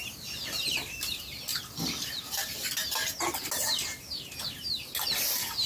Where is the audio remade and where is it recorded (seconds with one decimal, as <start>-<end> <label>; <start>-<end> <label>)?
0.0-5.7 recorded